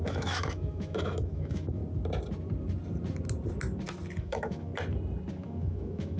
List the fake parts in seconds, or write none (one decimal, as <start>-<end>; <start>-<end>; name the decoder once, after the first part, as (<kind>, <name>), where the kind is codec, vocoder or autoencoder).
0.0-1.8 (autoencoder, DAC-VAE); 4.2-4.7; 5.3-6.2